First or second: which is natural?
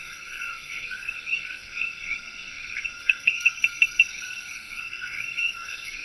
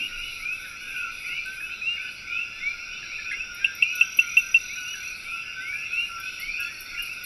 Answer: second